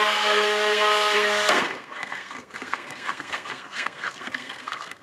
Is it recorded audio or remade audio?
remade